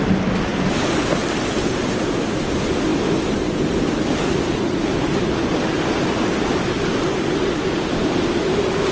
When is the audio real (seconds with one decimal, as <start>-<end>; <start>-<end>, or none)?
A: 0.0-8.9